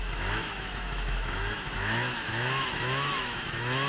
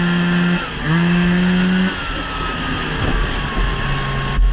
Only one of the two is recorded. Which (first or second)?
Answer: second